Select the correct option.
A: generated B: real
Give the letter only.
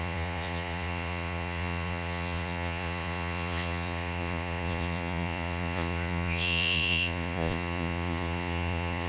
A